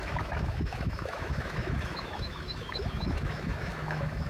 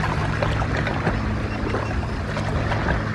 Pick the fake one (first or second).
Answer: first